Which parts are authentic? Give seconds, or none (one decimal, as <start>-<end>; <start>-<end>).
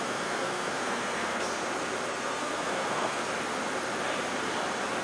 1.5-2.1; 3.2-5.0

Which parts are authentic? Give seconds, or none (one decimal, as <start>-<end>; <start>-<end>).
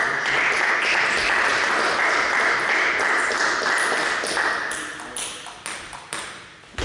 0.0-6.8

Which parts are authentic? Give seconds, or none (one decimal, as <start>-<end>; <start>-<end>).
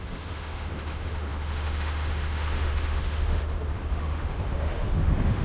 none